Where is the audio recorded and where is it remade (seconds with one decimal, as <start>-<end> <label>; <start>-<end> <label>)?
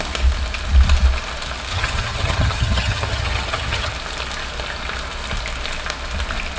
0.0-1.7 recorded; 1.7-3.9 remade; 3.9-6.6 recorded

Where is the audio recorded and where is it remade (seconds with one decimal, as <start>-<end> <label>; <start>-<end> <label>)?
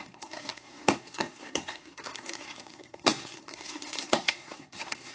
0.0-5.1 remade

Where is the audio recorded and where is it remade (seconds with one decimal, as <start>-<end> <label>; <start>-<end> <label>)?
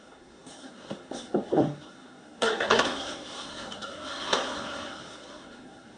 0.0-6.0 remade